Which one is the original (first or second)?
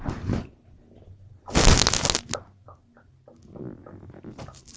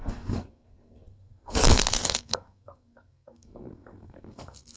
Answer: first